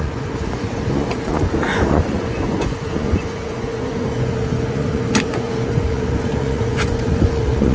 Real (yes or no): no